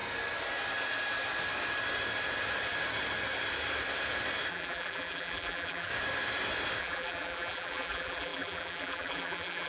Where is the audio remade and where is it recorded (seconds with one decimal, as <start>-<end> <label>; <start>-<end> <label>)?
0.0-4.5 recorded; 4.5-5.9 remade; 5.9-6.8 recorded; 6.8-9.7 remade